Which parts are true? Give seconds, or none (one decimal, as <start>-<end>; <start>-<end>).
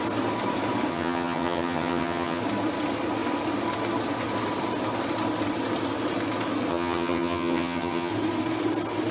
0.0-0.9; 2.4-6.7; 8.1-9.1